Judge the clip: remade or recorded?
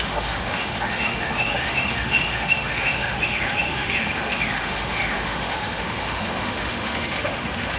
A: remade